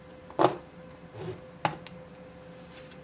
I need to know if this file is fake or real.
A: real